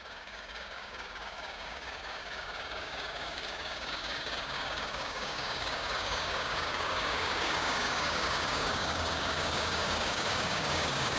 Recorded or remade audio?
remade